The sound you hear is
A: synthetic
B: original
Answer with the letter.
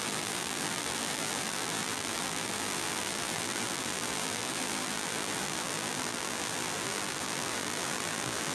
A